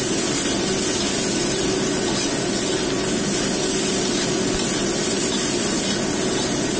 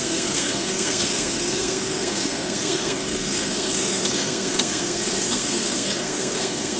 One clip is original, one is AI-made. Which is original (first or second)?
first